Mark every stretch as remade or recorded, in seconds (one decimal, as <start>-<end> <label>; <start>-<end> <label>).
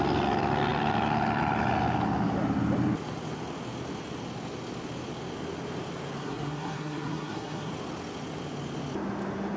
0.0-6.2 recorded; 6.2-7.7 remade; 7.7-9.6 recorded